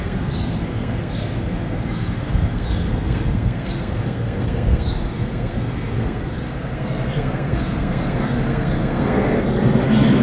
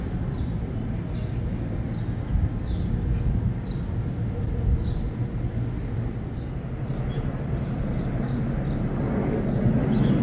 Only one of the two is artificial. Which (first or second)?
first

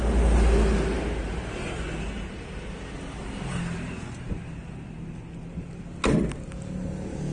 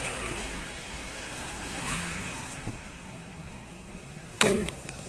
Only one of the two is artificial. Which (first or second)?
second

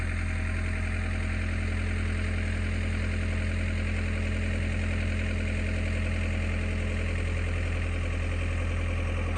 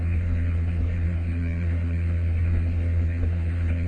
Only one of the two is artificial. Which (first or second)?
second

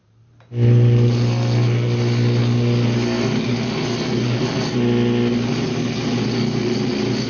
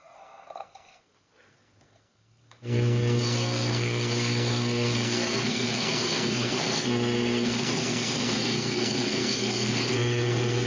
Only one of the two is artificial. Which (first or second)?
second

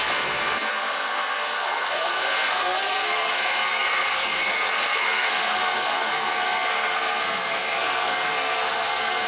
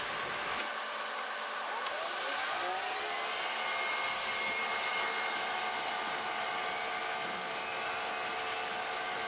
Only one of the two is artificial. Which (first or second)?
first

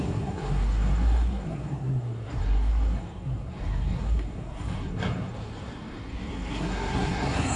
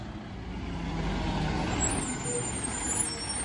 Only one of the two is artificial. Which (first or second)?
first